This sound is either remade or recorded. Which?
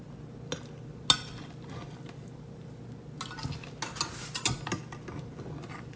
recorded